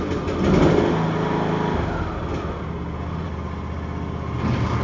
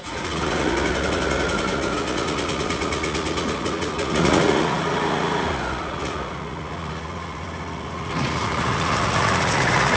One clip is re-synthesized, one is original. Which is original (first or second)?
first